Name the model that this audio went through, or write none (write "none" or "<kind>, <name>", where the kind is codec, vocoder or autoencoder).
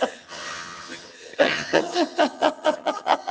vocoder, HiFi-GAN